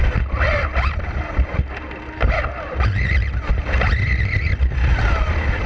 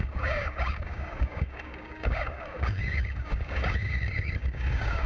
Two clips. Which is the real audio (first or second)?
first